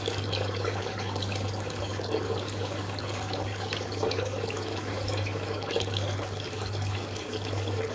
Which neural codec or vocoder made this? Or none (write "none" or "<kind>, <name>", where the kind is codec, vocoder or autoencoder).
codec, DAC